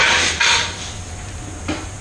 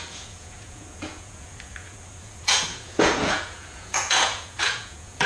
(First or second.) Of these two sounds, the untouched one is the first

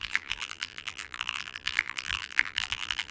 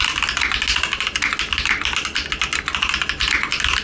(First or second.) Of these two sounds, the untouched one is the second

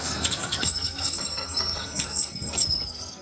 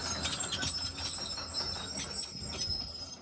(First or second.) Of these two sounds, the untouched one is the second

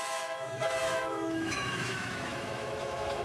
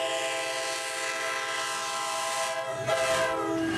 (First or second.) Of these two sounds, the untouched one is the second